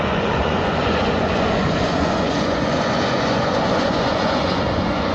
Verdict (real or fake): fake